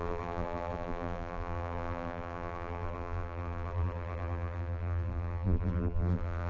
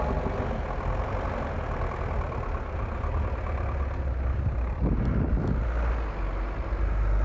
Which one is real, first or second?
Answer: second